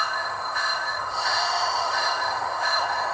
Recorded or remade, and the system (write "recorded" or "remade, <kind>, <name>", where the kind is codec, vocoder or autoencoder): remade, autoencoder, DAC-VAE